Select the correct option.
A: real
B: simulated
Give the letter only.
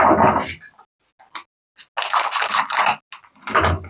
A